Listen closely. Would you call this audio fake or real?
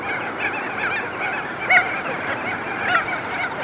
real